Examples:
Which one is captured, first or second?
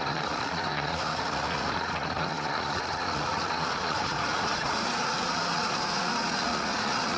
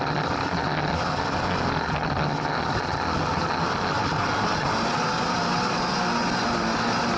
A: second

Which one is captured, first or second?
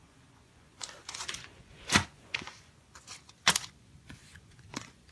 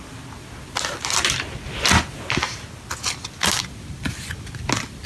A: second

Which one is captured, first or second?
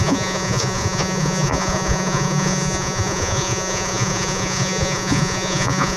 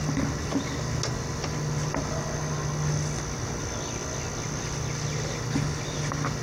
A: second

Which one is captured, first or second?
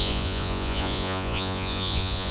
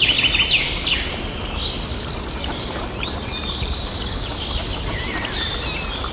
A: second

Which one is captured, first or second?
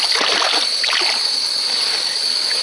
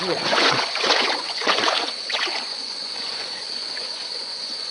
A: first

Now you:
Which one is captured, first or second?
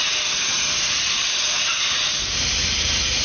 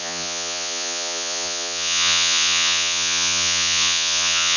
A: first